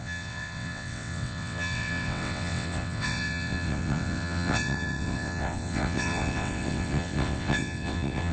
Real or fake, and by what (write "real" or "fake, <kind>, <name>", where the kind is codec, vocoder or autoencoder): fake, vocoder, WaveNeXt